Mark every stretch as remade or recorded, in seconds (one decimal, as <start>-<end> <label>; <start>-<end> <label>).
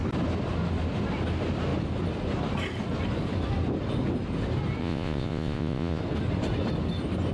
0.0-4.8 recorded; 4.8-6.0 remade; 6.0-7.3 recorded